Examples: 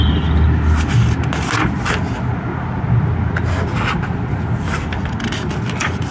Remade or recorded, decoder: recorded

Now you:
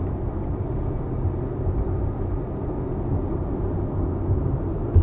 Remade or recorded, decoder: recorded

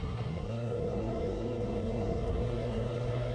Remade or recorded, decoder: remade, codec, SNAC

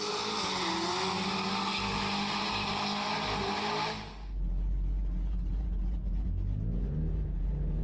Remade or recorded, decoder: recorded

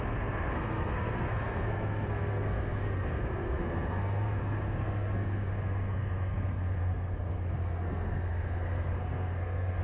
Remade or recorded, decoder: remade, codec, SNAC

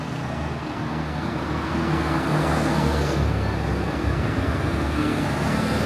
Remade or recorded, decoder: remade, codec, SNAC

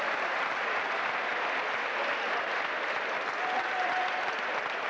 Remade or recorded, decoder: recorded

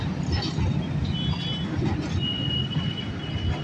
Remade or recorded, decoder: recorded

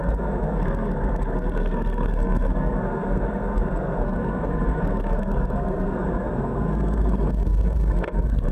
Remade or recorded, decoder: remade, codec, SNAC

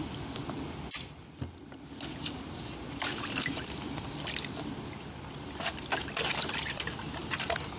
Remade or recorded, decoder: recorded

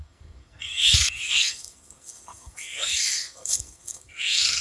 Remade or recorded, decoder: remade, codec, SNAC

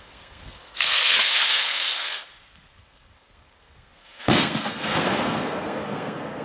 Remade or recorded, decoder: remade, codec, SNAC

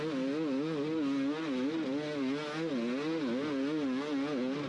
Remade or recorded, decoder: recorded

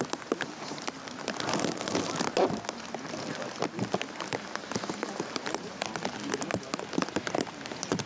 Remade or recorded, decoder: recorded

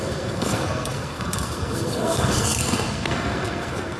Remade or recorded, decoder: remade, codec, SNAC